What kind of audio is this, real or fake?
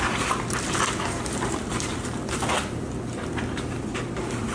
fake